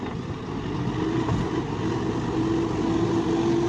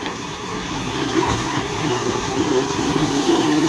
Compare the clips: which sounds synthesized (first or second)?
second